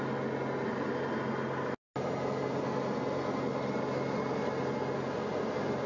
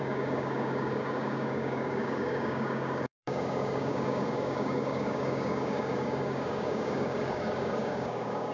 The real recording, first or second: first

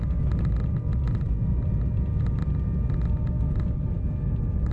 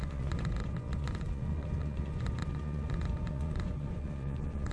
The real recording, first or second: first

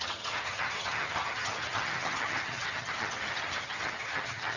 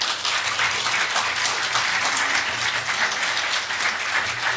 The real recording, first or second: second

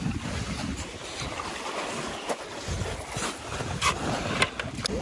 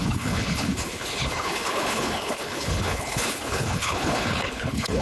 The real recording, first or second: first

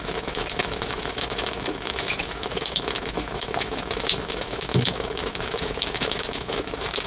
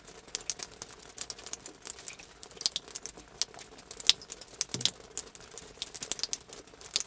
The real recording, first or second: second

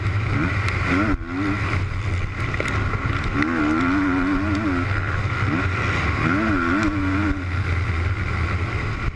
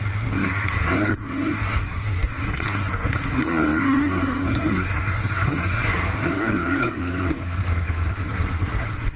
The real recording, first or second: first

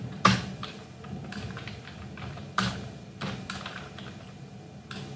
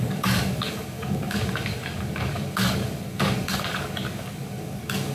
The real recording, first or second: first